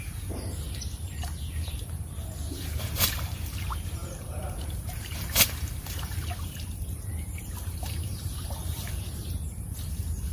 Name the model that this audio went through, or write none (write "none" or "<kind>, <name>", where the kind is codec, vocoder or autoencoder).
vocoder, BigVGAN v2